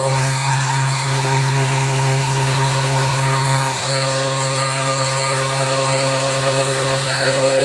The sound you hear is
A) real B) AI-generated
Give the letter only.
B